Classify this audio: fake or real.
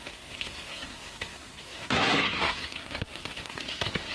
fake